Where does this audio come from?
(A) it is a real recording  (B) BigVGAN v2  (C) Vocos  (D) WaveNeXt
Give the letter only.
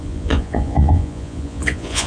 C